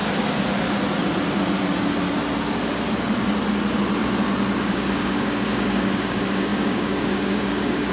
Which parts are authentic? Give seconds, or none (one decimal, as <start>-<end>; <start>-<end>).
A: 0.0-4.7